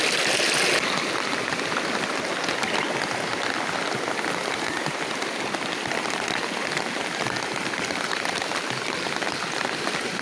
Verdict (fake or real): real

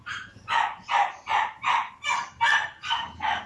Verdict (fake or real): fake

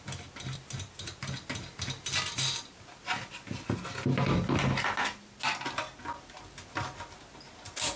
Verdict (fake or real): real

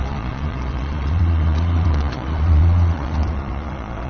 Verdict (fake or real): fake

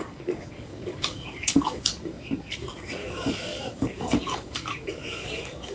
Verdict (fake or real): fake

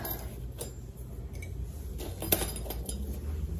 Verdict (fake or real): real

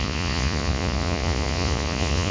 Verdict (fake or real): fake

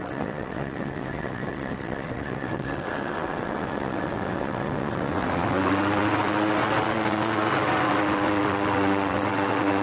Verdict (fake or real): fake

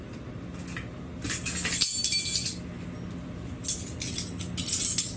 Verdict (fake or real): real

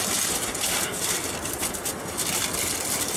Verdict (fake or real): real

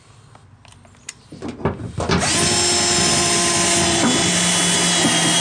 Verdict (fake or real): real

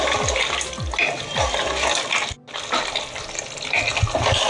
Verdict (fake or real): real